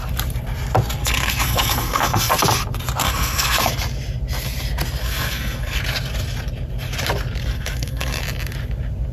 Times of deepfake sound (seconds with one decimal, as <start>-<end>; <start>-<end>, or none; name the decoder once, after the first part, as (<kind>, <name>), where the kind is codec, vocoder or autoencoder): 1.0-2.3 (codec, SNAC); 3.0-3.7; 5.0-5.8; 7.5-8.2

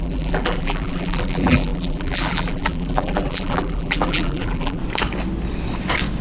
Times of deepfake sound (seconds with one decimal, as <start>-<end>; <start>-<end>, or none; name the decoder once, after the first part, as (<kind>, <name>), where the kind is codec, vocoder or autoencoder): 0.0-4.8 (vocoder, BigVGAN v2)

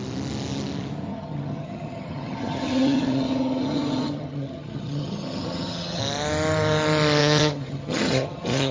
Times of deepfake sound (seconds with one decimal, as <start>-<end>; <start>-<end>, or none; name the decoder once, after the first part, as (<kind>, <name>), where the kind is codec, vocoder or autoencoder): 1.1-6.0 (vocoder, HiFi-GAN); 7.2-8.7

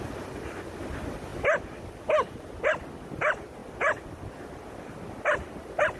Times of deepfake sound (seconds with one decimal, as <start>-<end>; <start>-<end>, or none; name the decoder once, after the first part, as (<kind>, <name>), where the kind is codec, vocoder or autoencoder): none